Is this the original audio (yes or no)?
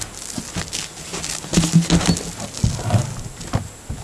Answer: yes